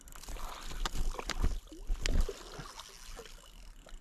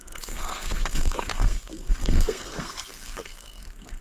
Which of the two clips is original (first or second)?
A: first